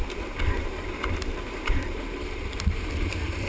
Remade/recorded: remade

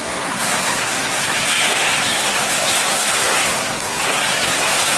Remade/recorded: remade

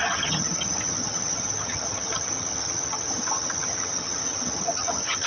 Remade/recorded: remade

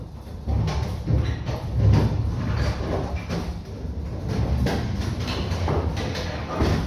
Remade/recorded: remade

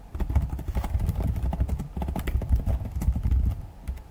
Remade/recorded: recorded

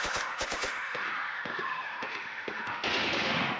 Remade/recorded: remade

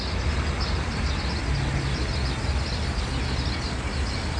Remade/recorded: recorded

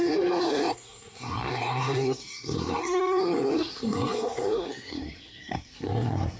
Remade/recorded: remade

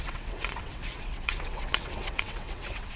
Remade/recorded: remade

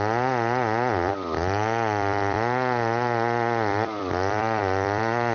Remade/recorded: remade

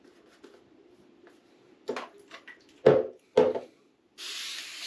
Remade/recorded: recorded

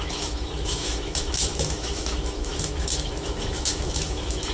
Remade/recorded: remade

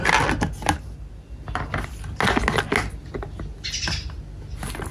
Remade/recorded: recorded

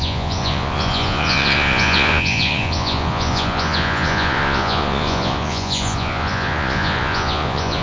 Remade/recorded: remade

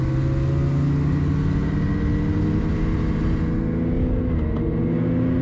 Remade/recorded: recorded